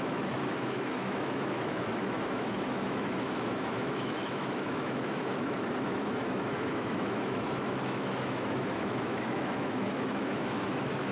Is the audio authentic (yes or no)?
no